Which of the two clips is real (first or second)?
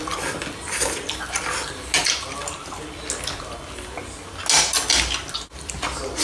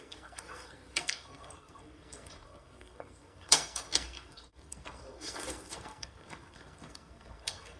first